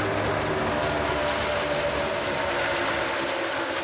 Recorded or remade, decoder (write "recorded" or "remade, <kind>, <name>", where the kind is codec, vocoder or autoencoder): recorded